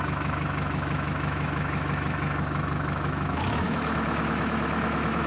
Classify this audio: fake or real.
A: fake